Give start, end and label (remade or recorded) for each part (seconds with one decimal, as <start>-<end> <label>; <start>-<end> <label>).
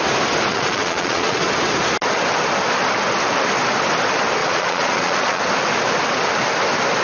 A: 0.0-0.5 recorded; 0.5-1.4 remade; 1.4-4.4 recorded; 4.4-5.4 remade; 5.4-7.0 recorded